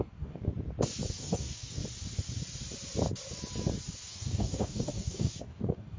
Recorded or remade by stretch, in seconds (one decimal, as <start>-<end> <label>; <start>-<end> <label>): 0.0-0.5 remade; 0.5-1.1 recorded; 1.1-1.8 remade; 1.8-4.1 recorded; 4.1-6.0 remade